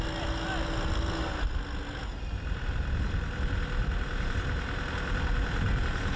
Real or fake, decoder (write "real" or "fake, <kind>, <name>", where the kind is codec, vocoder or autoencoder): real